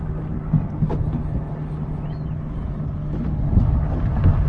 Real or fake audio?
real